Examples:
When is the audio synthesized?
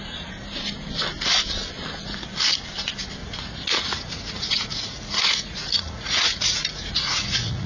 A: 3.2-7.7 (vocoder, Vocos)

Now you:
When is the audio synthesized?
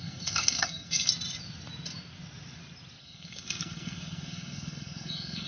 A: 0.0-1.1 (codec, SNAC); 3.0-5.5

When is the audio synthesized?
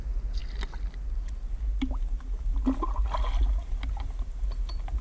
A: none